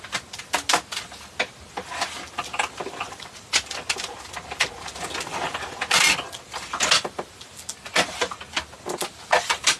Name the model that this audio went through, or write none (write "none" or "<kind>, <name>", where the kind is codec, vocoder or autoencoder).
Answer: none